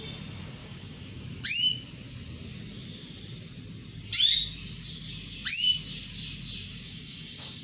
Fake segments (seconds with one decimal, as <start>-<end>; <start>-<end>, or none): 0.6-1.2; 6.7-7.6